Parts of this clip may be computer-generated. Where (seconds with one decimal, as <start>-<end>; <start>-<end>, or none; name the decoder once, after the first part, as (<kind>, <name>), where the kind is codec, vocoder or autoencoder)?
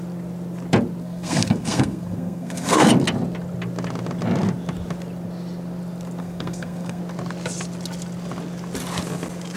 1.0-2.9 (codec, SNAC); 6.2-7.0